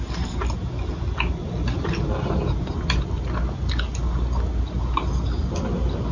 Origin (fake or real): real